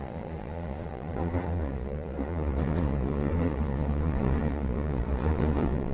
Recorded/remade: remade